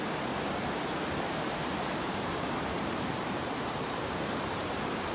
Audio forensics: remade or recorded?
remade